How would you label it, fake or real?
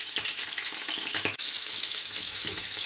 fake